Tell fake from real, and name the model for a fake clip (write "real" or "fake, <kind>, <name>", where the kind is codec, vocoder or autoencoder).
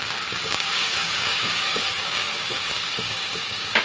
fake, codec, DAC